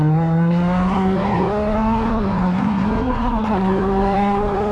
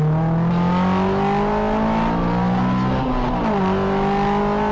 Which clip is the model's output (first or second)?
first